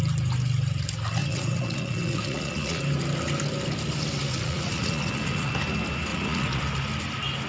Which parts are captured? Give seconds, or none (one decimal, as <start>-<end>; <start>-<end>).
0.0-1.2; 2.8-4.3; 5.5-6.1; 6.6-7.5